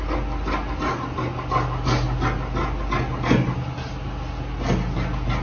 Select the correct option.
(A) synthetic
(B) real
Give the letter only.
B